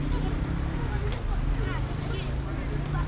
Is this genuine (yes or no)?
yes